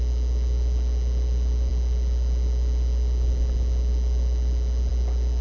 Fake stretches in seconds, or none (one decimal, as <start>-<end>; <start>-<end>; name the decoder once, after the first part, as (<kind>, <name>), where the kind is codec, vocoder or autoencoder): none